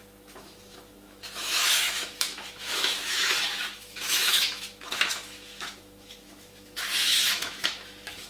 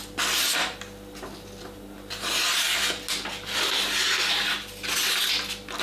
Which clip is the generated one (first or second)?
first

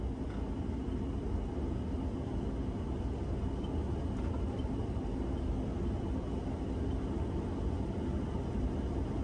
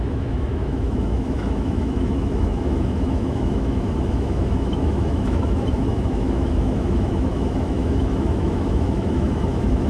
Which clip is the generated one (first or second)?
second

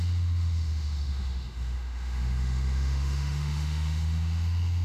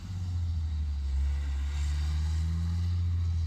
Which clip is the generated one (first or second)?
first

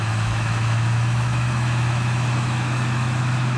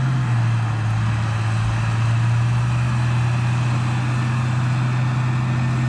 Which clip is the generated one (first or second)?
first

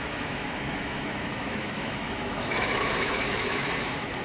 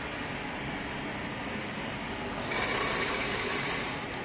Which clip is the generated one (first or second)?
first